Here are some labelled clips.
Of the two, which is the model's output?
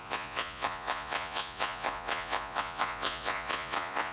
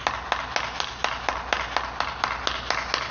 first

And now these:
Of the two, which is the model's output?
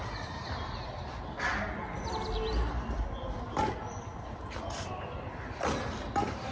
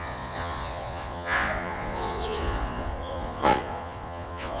second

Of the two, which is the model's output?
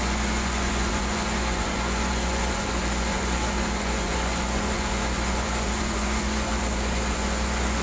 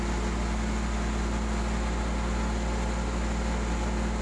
first